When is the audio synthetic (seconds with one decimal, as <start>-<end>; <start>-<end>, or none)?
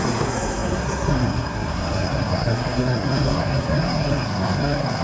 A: 0.0-5.0